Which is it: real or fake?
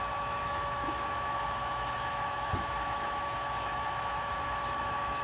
fake